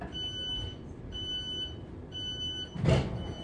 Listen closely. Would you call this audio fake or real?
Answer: real